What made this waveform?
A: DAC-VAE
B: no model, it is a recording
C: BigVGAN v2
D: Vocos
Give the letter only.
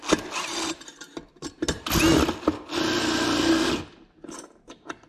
B